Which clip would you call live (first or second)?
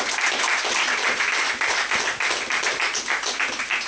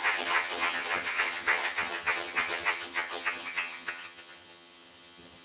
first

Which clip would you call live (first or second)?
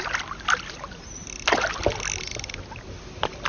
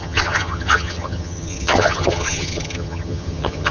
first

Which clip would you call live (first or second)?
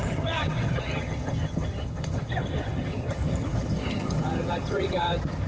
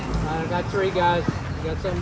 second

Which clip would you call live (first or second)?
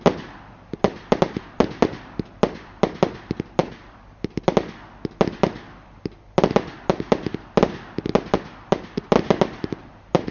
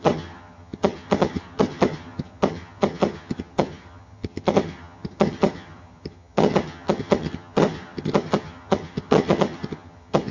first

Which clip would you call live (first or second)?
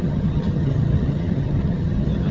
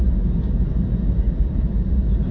second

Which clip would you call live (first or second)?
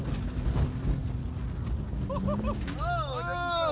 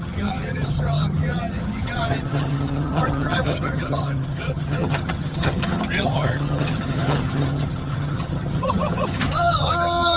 first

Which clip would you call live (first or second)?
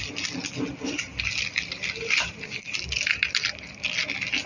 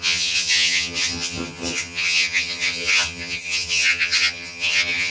first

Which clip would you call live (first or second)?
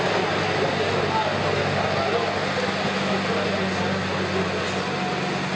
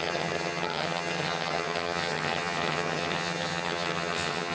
first